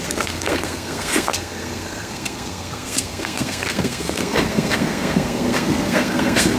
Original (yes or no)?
no